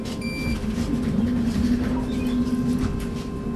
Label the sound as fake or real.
real